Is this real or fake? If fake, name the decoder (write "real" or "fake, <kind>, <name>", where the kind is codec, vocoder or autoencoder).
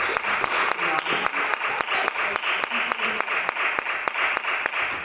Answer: real